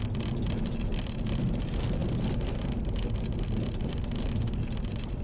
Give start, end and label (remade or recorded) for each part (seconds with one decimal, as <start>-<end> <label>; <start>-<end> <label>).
0.0-5.2 recorded